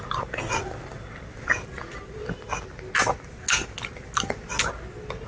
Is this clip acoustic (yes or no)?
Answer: yes